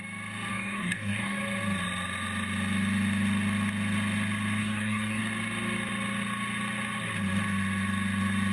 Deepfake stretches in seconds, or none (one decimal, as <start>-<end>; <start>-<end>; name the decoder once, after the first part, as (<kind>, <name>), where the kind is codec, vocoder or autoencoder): 0.5-1.4 (codec, DAC); 4.6-5.2